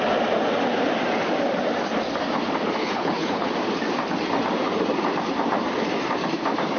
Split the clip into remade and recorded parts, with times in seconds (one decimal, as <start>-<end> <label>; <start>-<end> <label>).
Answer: 0.0-2.8 recorded; 2.8-3.5 remade; 3.5-6.8 recorded